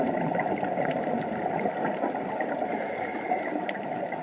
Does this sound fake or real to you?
real